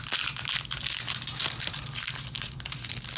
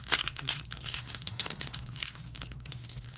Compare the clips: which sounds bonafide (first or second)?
first